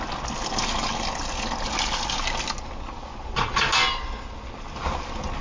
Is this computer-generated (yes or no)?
no